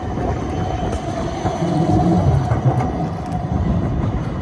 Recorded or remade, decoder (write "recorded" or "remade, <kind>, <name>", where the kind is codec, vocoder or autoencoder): recorded